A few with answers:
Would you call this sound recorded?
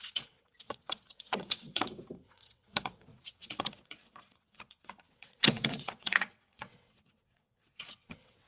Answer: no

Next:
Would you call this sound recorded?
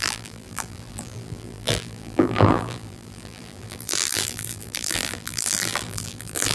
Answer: no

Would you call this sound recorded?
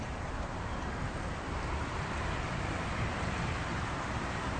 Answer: no